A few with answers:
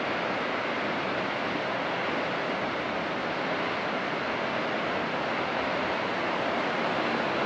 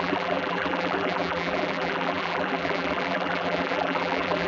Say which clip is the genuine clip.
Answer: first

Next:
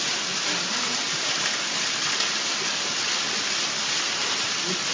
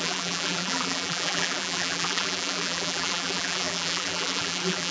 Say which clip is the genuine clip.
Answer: first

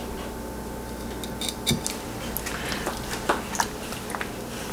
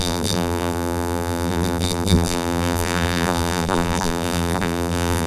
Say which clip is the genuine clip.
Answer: first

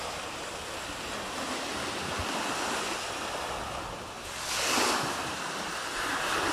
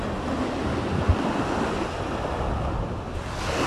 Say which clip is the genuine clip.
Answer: second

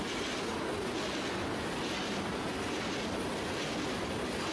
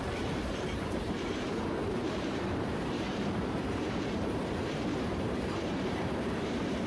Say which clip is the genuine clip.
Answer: first